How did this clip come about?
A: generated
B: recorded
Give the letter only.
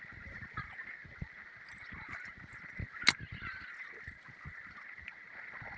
B